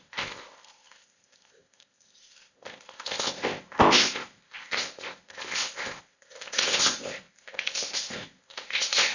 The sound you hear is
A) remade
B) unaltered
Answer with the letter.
A